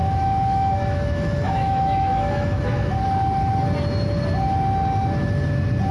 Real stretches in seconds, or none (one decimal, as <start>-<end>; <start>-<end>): 3.0-5.9